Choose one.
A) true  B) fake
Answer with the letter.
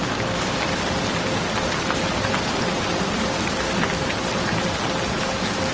A